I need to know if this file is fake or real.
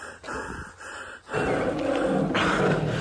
real